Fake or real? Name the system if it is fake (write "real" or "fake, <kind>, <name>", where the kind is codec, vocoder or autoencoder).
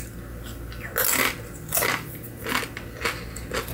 real